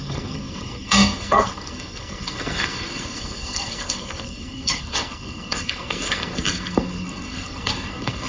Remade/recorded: remade